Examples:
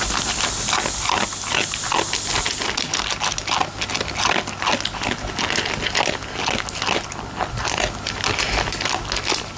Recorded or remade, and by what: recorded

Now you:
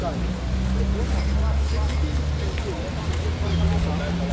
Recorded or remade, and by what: recorded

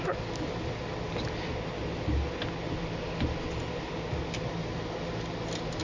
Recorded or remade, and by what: recorded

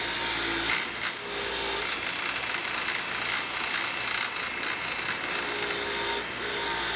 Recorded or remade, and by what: recorded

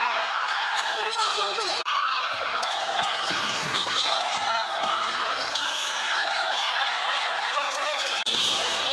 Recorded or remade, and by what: remade, codec, SNAC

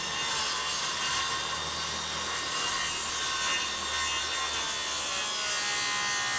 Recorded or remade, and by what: recorded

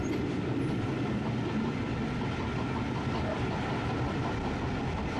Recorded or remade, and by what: recorded